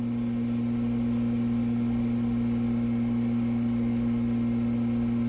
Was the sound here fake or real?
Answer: real